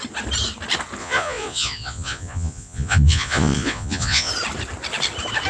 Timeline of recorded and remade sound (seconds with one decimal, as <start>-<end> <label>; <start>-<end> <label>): 0.0-1.0 recorded; 1.0-4.3 remade; 4.3-5.5 recorded